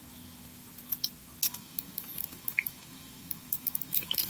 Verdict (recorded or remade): remade